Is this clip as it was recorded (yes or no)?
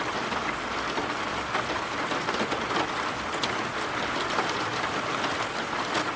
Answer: yes